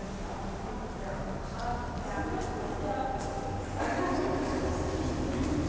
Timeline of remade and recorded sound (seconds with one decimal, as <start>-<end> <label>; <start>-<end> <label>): 0.0-5.7 recorded